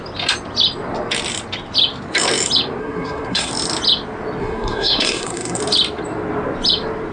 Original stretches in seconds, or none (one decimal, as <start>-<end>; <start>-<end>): 0.0-2.8; 3.5-4.4; 5.6-7.1